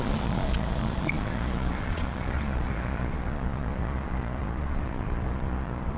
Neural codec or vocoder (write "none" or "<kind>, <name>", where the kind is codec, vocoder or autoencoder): vocoder, Vocos